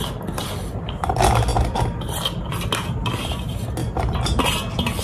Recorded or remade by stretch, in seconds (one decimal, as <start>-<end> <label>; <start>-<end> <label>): 0.0-5.0 recorded